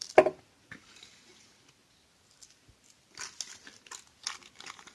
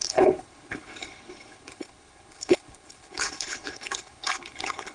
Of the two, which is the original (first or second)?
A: first